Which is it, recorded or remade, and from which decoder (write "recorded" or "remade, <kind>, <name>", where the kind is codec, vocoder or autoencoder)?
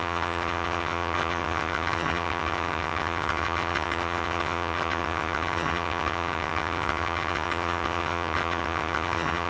remade, vocoder, HiFi-GAN